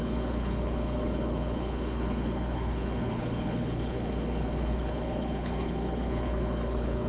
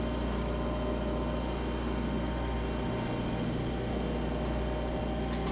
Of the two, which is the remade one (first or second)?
first